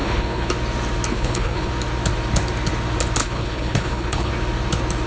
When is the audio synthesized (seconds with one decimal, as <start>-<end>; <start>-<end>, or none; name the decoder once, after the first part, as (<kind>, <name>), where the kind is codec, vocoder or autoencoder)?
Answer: 0.0-0.5 (codec, HILCodec); 1.1-1.7; 3.2-4.3